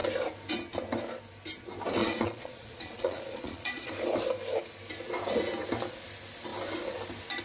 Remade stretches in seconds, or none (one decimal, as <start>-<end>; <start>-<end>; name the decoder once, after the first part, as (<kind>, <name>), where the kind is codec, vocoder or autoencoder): 2.0-3.9 (vocoder, Vocos)